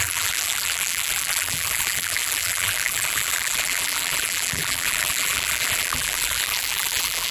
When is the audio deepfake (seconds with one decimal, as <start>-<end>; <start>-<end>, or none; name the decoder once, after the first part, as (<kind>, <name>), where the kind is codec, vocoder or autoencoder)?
0.0-7.3 (vocoder, BigVGAN v2)